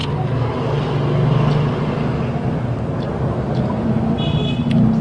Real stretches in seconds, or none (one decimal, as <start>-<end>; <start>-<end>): 0.0-5.0